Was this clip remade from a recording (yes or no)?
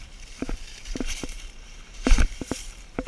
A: yes